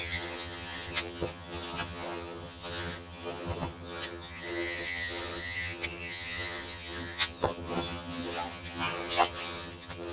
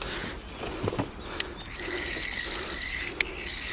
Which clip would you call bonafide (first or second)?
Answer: second